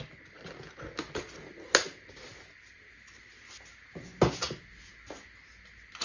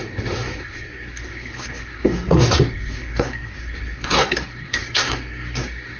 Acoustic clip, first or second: first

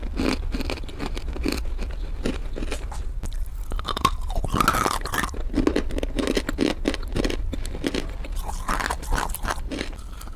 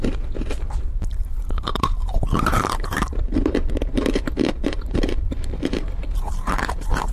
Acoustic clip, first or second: first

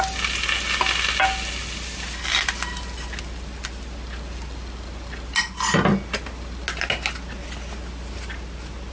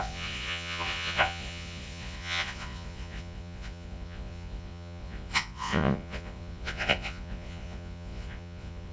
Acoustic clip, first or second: first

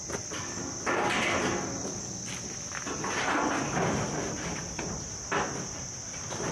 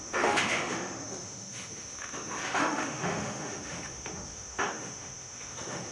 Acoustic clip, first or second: first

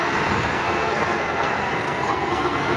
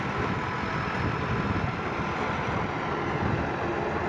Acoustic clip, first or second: second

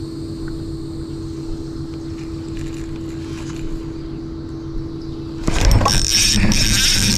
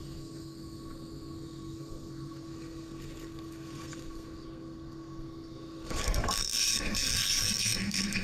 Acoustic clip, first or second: first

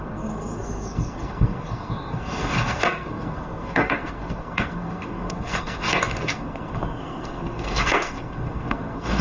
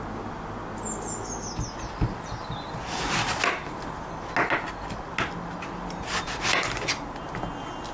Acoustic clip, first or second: second